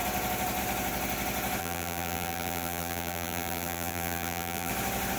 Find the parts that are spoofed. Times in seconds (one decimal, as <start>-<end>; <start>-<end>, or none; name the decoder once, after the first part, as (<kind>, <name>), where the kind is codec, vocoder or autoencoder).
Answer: 1.6-4.7 (vocoder, BigVGAN v2)